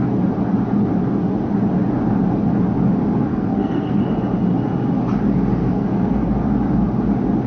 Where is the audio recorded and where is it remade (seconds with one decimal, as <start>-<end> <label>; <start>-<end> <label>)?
0.0-3.3 recorded; 3.3-4.0 remade; 4.0-5.6 recorded; 5.6-6.3 remade; 6.3-7.5 recorded